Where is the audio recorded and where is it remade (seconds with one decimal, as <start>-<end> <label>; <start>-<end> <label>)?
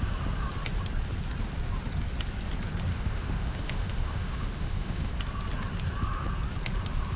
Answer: 0.0-2.9 recorded; 2.9-5.1 remade; 5.1-7.2 recorded